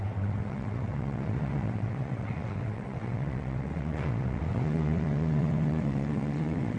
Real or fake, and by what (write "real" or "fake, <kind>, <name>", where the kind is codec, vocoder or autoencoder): fake, vocoder, WaveNeXt